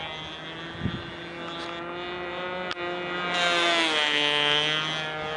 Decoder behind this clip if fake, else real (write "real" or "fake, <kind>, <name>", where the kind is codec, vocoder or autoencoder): real